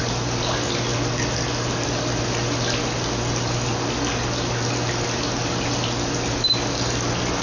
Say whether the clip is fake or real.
real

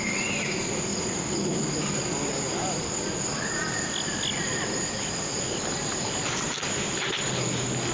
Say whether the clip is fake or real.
real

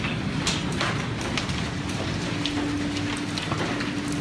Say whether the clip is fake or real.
real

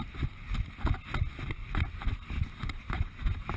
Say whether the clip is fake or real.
real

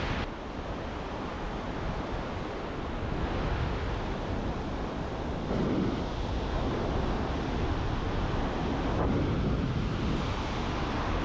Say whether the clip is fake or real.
real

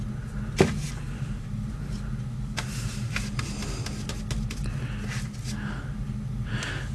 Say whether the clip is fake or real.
real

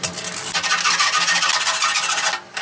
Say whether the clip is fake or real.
real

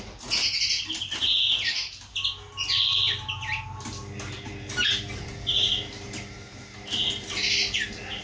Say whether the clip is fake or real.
real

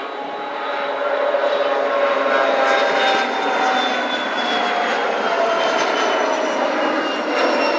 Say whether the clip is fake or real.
real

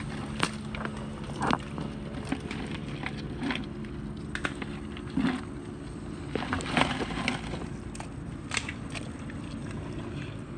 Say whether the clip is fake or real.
real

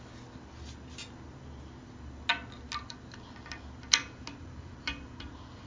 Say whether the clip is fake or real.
real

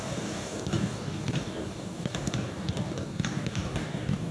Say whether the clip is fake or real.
fake